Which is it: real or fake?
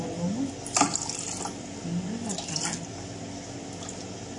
real